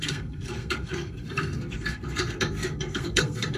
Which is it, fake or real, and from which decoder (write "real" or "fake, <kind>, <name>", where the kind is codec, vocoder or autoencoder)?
fake, codec, SNAC